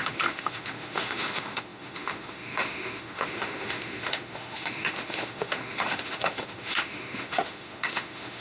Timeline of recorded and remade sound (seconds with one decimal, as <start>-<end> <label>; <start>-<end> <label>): 0.0-8.4 remade